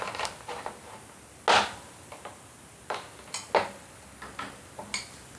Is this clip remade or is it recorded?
recorded